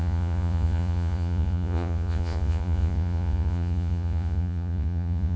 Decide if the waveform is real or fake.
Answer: fake